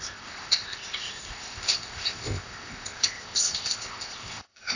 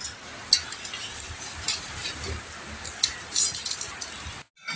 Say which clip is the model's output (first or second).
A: first